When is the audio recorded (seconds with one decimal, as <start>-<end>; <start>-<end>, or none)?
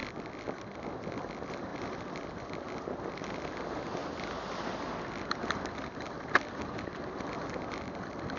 0.0-8.4